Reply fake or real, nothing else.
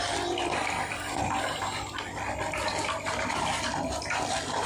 real